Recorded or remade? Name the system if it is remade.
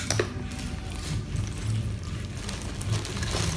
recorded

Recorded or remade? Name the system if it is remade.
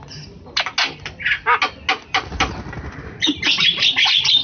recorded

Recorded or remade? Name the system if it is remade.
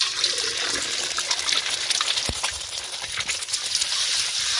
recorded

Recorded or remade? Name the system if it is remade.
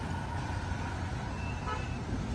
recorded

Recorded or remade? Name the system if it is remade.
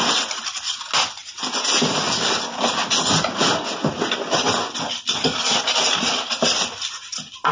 recorded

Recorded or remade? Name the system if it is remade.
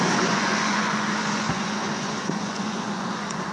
remade, vocoder, Vocos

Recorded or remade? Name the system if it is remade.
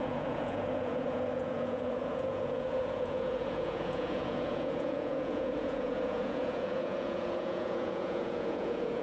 remade, vocoder, Vocos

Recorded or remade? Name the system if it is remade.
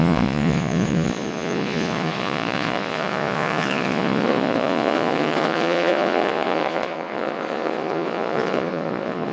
remade, vocoder, Vocos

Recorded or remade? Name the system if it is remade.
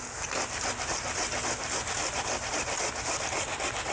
recorded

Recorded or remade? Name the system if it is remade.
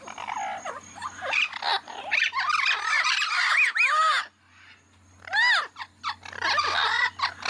recorded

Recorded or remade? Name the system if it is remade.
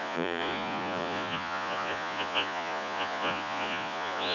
remade, vocoder, Vocos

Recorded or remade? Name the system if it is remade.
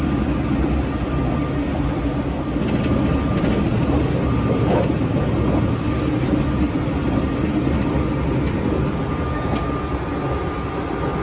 recorded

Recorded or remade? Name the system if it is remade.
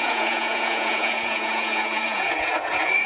remade, vocoder, Vocos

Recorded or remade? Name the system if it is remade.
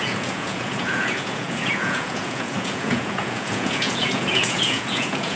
remade, vocoder, Vocos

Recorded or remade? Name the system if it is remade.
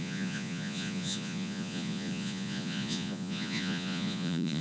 remade, vocoder, Vocos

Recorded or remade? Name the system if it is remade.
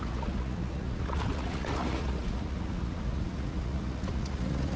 remade, vocoder, Vocos